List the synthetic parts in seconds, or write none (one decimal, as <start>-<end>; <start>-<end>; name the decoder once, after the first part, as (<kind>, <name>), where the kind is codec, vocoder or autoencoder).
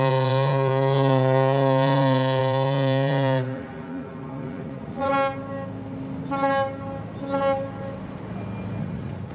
0.0-5.1 (vocoder, Vocos); 8.8-9.3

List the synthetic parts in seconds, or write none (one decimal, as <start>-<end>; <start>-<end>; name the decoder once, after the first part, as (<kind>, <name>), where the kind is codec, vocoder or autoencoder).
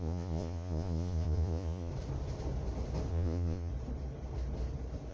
0.0-1.9 (vocoder, Vocos); 3.1-3.7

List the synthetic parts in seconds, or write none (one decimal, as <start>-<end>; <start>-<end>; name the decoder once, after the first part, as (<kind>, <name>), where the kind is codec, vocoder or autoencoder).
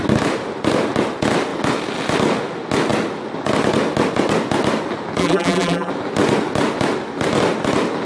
5.2-5.9 (vocoder, BigVGAN v2)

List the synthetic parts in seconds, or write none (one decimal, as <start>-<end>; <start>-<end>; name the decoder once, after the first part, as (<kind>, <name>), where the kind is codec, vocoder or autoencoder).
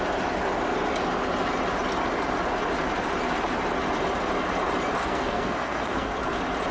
5.0-6.1 (codec, SNAC)